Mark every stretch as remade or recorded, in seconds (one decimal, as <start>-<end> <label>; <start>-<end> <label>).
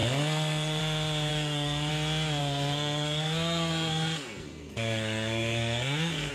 0.0-0.8 remade; 0.8-1.3 recorded; 1.3-1.9 remade; 1.9-2.4 recorded; 2.4-6.3 remade